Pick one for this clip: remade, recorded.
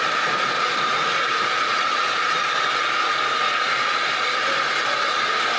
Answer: remade